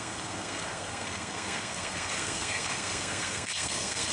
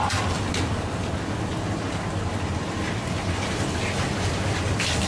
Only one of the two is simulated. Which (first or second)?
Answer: first